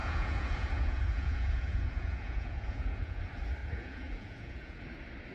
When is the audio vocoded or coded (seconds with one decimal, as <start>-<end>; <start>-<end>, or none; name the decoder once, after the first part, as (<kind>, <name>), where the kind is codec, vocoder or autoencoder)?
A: 0.0-3.2 (vocoder, Vocos); 3.6-4.8